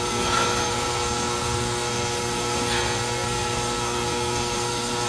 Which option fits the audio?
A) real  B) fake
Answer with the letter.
B